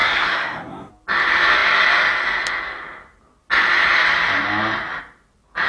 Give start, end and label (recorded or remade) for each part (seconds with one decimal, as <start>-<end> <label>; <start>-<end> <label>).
0.0-0.9 remade; 0.9-5.7 recorded